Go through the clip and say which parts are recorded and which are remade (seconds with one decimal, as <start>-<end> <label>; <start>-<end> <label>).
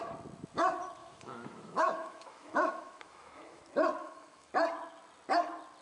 0.0-1.0 recorded; 1.0-3.6 remade; 3.6-4.0 recorded; 4.0-4.5 remade; 4.5-5.8 recorded